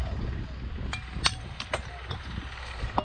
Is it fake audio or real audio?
real